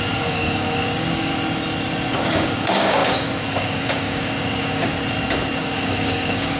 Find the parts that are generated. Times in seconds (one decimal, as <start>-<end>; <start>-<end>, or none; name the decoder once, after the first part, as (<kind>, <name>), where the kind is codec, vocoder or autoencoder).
0.0-1.3 (codec, DAC); 2.2-4.9; 5.6-6.6